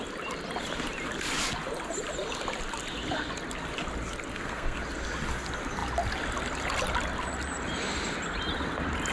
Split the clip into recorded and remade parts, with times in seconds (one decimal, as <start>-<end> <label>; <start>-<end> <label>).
0.0-4.3 recorded; 4.3-4.8 remade; 4.8-9.1 recorded